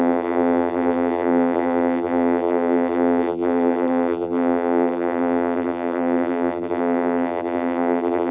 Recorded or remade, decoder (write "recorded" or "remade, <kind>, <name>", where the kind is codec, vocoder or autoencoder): remade, vocoder, BigVGAN v2